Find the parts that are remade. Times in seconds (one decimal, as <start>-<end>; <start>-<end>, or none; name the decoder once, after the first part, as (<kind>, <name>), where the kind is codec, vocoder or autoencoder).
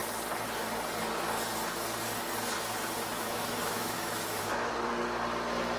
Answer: 3.1-4.7 (autoencoder, DAC-VAE)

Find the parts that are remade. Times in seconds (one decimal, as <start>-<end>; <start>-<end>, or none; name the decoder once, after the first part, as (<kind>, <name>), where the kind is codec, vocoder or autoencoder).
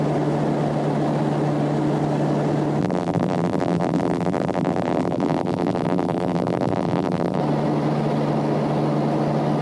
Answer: 2.8-7.4 (vocoder, BigVGAN v2)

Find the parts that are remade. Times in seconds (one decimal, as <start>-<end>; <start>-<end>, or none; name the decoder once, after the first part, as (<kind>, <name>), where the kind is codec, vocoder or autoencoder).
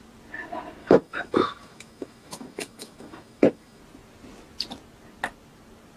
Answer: 0.8-3.8 (autoencoder, DAC-VAE)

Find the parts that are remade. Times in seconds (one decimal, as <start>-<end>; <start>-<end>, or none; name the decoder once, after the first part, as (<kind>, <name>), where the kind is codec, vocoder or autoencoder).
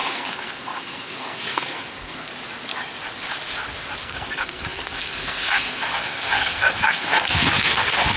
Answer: 0.0-2.3 (codec, SNAC); 4.0-8.2